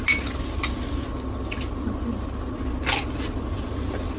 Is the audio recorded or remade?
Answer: recorded